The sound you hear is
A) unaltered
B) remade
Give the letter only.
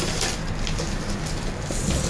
A